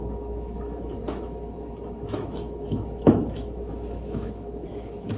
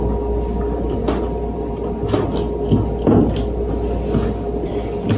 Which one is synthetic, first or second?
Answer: first